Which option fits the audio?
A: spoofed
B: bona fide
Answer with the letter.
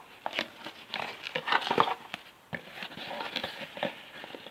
B